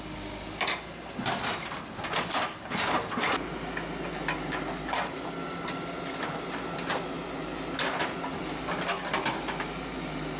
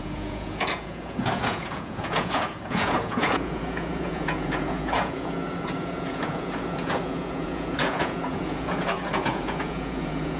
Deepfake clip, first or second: second